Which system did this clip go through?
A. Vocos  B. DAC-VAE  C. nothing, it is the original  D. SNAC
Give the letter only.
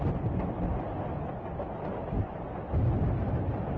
C